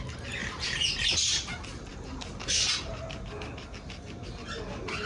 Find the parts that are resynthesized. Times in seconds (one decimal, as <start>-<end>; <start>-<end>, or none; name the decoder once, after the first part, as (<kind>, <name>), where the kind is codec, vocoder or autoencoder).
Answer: 0.4-1.5 (vocoder, BigVGAN v2)